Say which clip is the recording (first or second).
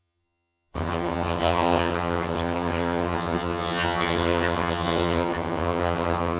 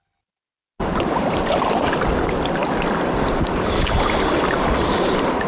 second